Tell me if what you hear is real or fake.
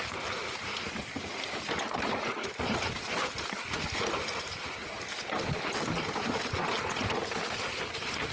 real